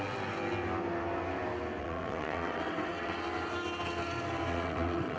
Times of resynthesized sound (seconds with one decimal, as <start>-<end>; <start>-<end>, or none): 1.8-3.1; 4.5-5.2